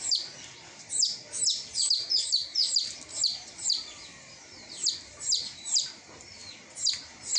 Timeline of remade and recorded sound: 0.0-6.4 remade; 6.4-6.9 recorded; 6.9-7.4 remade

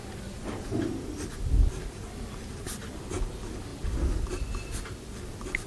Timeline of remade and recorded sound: 0.0-5.7 recorded

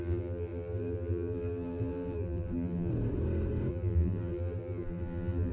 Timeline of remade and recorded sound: 0.0-2.9 remade; 2.9-3.7 recorded; 3.7-5.5 remade

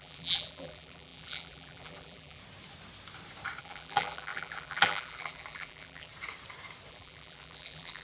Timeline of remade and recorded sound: 0.0-2.4 remade; 2.4-3.6 recorded; 3.6-6.1 remade; 6.1-6.9 recorded; 6.9-8.0 remade

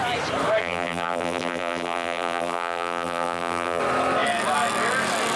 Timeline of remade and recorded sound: 0.0-0.6 recorded; 0.6-3.8 remade; 3.8-5.4 recorded